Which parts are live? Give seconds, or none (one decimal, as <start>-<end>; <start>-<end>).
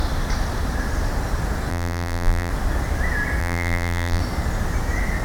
0.0-1.7; 2.5-3.4; 4.2-5.2